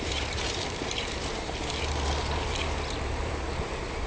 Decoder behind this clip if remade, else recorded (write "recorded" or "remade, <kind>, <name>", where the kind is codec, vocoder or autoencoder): remade, vocoder, BigVGAN v2